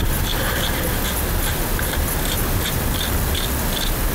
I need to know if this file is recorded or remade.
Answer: recorded